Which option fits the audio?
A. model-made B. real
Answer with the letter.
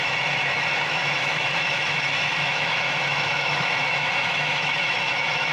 A